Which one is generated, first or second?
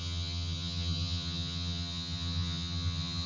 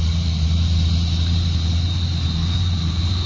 first